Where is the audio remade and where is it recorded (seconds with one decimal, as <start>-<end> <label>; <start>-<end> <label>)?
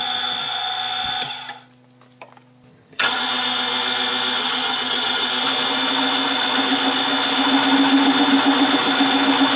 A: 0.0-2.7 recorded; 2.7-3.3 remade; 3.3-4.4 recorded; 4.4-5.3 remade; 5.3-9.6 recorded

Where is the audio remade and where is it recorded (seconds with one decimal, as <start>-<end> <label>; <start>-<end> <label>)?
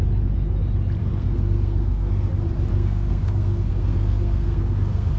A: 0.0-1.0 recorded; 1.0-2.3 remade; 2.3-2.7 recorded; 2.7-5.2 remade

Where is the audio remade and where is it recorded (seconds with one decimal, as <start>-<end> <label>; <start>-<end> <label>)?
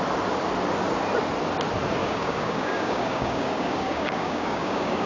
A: 0.0-2.0 recorded; 2.0-5.1 remade